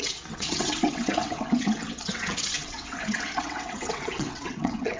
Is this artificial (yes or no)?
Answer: yes